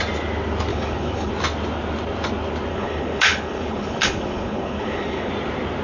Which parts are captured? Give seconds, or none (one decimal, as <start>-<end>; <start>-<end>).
0.0-0.7; 1.3-2.7; 5.3-5.8